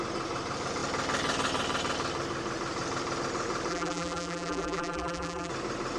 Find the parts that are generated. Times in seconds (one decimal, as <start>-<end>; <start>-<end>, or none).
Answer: 3.7-5.5